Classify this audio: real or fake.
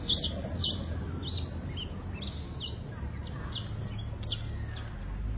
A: real